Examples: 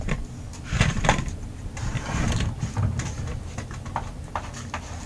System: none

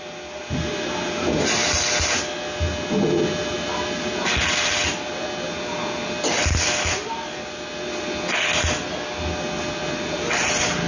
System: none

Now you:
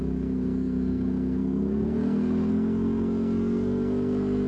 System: codec, SNAC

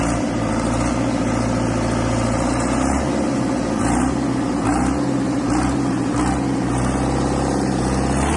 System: none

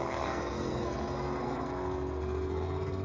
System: codec, SNAC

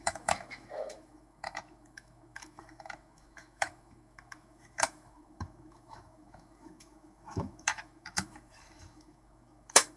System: autoencoder, DAC-VAE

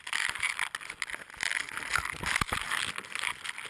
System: none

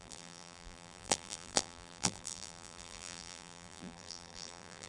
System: vocoder, BigVGAN v2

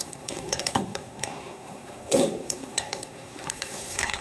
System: codec, SNAC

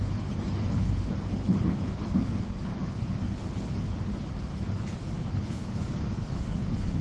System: codec, HILCodec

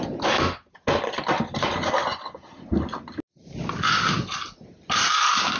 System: none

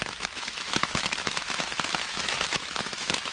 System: autoencoder, DAC-VAE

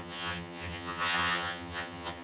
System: vocoder, HiFi-GAN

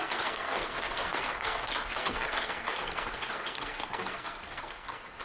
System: codec, SNAC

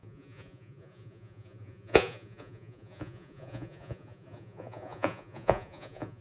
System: vocoder, Vocos